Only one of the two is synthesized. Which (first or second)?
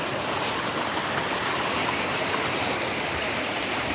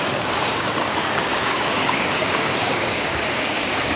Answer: second